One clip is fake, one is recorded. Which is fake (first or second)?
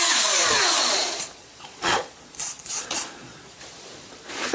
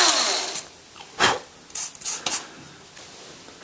first